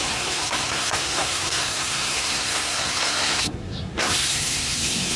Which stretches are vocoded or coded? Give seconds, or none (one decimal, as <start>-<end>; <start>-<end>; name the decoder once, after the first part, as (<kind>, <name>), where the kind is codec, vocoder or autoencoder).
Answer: 0.0-5.2 (codec, SNAC)